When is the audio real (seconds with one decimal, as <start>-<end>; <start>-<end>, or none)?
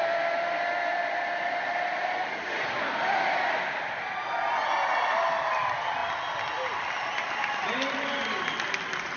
0.0-9.2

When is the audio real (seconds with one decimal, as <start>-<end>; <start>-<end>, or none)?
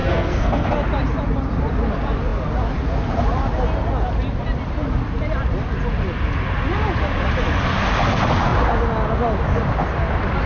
0.7-10.5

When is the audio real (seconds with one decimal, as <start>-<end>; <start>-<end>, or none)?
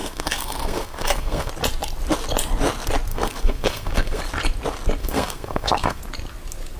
1.5-3.1; 4.2-5.0; 6.0-6.8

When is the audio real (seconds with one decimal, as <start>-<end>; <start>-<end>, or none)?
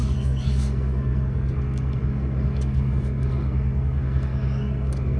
none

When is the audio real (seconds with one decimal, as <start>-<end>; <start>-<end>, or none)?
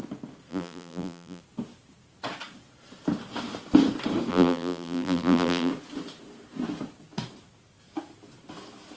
0.0-0.5; 1.4-4.3; 5.7-9.0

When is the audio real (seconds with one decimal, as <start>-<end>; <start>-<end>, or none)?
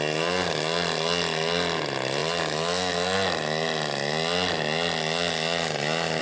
0.0-6.2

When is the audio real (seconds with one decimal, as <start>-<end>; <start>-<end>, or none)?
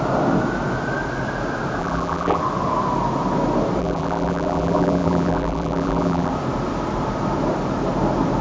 0.0-1.8; 2.4-3.8; 6.3-8.4